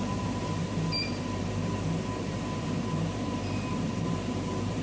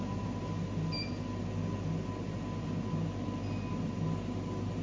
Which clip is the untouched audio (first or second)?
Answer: second